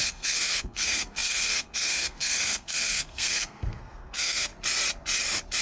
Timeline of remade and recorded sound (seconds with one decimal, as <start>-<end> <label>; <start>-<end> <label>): 0.0-4.5 remade; 4.5-5.6 recorded